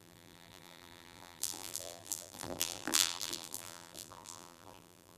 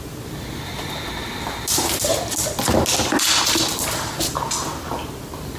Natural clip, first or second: second